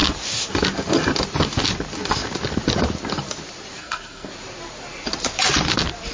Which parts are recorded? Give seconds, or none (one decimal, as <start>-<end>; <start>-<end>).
0.0-3.8; 4.3-6.1